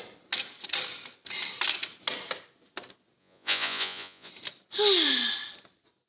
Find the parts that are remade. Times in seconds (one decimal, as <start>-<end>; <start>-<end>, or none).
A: 3.2-4.3